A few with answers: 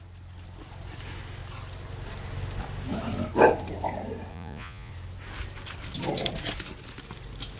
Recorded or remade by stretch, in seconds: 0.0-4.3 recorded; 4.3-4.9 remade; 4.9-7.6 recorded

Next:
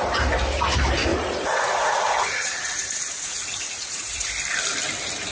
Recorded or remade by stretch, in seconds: 0.0-1.1 recorded; 1.1-4.3 remade; 4.3-5.3 recorded

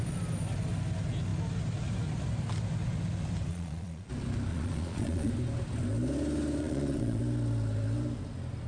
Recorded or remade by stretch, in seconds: 0.0-3.5 recorded; 3.5-4.1 remade; 4.1-4.5 recorded; 4.5-5.3 remade; 5.3-6.6 recorded; 6.6-7.2 remade; 7.2-8.7 recorded

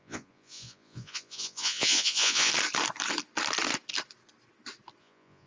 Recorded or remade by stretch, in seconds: 0.0-2.5 remade; 2.5-5.0 recorded; 5.0-5.5 remade